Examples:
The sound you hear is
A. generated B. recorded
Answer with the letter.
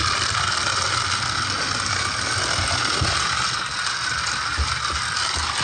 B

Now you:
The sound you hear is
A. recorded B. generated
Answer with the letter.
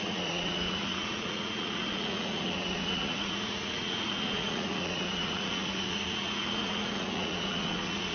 B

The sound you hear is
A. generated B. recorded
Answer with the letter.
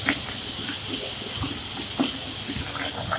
B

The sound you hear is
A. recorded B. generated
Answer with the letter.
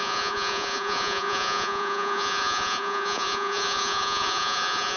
B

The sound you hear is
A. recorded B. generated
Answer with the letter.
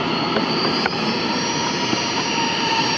A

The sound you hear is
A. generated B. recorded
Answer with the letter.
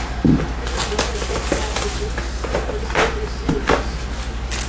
B